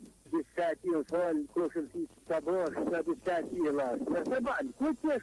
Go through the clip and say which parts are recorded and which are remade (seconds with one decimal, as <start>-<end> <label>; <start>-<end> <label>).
0.0-0.5 recorded; 0.5-1.6 remade; 1.6-5.2 recorded